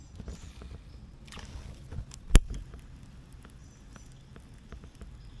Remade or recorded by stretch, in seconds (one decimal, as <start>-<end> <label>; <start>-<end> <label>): 0.0-5.4 recorded